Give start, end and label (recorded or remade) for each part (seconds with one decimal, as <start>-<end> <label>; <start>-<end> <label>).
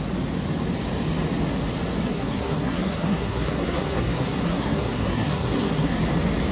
0.0-2.1 recorded; 2.1-6.0 remade; 6.0-6.5 recorded